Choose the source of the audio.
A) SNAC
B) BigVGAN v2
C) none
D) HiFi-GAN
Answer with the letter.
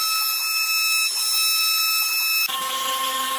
C